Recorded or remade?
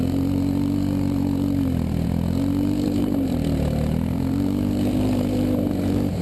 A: remade